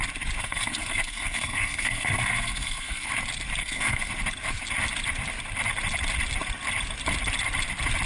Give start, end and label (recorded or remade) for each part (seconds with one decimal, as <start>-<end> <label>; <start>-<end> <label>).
0.0-0.4 recorded; 0.4-3.1 remade; 3.1-3.6 recorded; 3.6-4.1 remade; 4.1-8.1 recorded